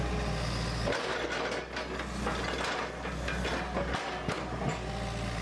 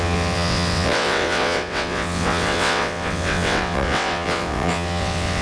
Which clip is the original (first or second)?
first